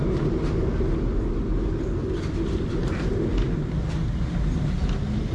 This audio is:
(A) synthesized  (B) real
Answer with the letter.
B